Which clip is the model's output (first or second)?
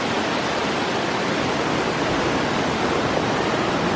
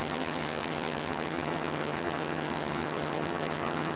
second